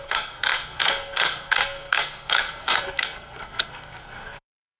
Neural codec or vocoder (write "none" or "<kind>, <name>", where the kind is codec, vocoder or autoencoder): codec, SNAC